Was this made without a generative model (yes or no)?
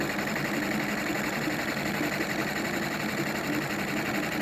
yes